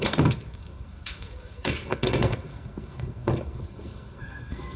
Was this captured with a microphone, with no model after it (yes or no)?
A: no